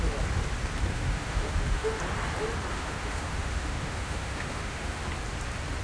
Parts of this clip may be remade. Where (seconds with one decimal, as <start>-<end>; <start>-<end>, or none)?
0.9-2.0; 2.7-5.0